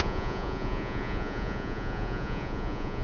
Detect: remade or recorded remade